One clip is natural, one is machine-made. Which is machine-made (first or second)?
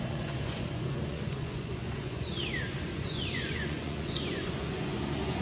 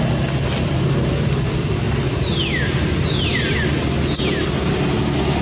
first